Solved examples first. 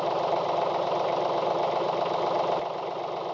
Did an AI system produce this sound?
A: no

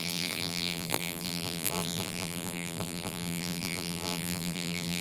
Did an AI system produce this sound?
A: yes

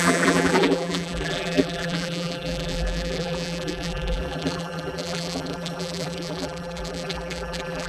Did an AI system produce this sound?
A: yes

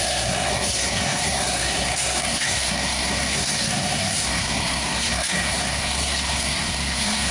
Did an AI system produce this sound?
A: yes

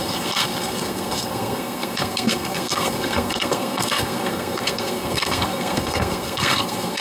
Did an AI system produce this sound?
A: yes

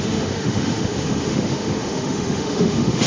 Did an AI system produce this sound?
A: yes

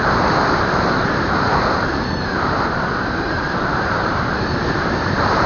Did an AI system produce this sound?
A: yes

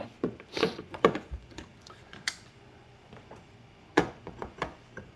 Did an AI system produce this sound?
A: yes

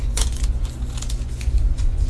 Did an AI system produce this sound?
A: yes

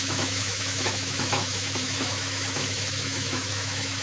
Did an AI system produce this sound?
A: yes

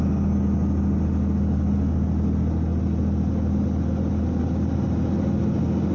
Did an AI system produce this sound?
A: no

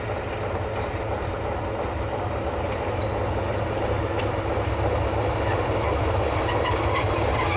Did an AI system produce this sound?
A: no